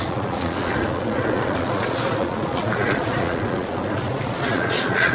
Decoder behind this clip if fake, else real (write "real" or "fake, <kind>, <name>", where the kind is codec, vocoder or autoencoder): fake, vocoder, Vocos